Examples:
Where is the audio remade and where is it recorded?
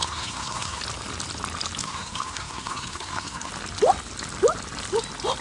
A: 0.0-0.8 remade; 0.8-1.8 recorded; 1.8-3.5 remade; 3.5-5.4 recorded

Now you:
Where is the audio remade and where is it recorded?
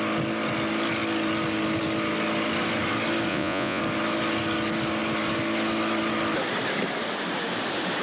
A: 0.0-3.3 recorded; 3.3-3.8 remade; 3.8-8.0 recorded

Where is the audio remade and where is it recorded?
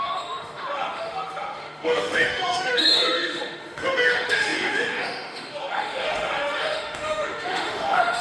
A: 0.0-8.2 remade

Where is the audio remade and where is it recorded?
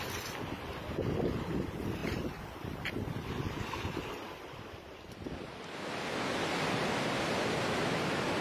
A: 0.0-2.0 recorded; 2.0-3.3 remade; 3.3-8.4 recorded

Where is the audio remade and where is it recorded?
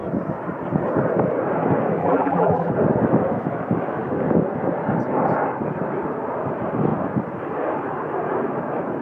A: 0.0-2.0 recorded; 2.0-2.7 remade; 2.7-9.0 recorded